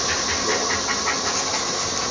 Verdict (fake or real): real